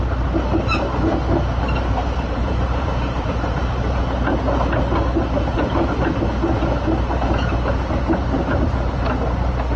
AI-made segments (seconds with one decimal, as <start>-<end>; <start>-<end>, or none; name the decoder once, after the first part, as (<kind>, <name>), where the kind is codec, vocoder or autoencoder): 2.0-4.0 (vocoder, BigVGAN v2)